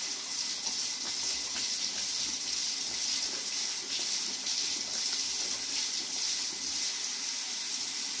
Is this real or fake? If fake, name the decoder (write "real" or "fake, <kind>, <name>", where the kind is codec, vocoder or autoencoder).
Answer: real